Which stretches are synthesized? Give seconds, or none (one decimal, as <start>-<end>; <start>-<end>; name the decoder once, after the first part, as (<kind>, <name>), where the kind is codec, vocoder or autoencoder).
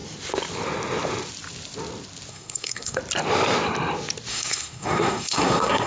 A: 2.3-3.0 (codec, SNAC); 4.3-5.9